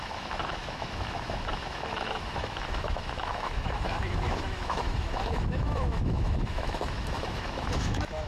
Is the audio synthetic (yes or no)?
yes